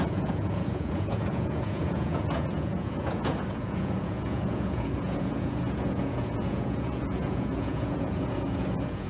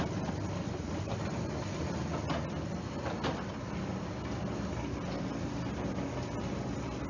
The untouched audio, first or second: second